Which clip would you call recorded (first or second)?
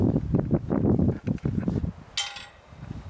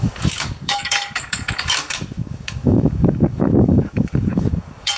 first